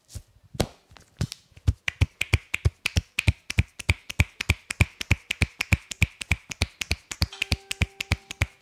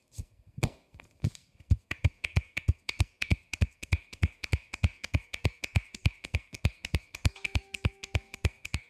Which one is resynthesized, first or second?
second